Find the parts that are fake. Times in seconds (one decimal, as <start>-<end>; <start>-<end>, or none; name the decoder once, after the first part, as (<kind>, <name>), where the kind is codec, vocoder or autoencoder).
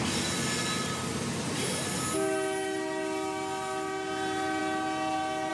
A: none